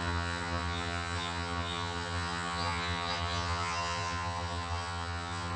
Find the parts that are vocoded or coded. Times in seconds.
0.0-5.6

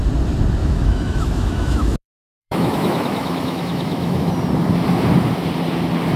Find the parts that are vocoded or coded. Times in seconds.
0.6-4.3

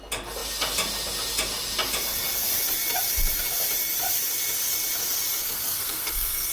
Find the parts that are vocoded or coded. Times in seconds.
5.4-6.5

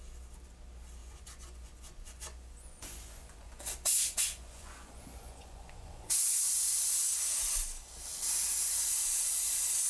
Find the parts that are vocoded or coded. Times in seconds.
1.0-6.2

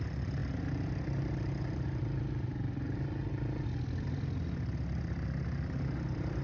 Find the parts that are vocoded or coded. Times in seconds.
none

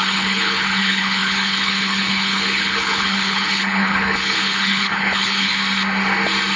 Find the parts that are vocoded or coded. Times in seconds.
0.0-5.5